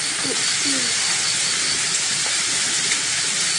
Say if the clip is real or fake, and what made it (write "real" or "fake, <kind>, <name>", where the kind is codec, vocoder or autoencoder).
real